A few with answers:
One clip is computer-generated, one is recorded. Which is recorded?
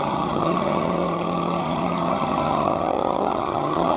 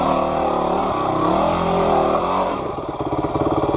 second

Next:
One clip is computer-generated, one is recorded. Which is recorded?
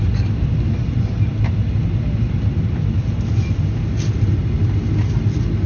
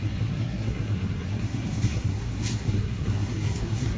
first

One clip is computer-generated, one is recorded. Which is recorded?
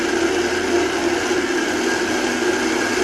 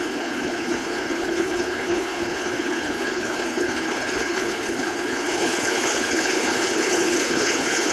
first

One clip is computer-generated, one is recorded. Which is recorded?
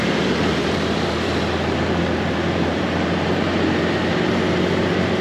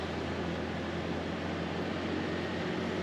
second